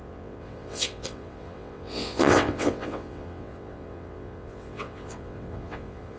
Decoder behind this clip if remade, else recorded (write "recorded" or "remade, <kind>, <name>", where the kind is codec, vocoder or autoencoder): remade, vocoder, WaveNeXt